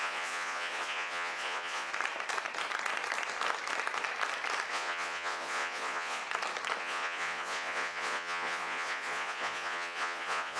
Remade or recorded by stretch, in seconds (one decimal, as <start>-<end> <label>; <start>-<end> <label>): 0.0-1.9 remade; 1.9-4.7 recorded; 4.7-6.2 remade; 6.2-6.8 recorded; 6.8-10.6 remade